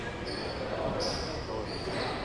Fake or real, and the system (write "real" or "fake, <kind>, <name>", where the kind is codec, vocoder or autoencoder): real